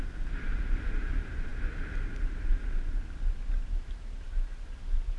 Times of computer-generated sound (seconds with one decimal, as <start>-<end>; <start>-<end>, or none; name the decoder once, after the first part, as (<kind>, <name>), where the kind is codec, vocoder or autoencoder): 0.5-1.1 (vocoder, BigVGAN v2)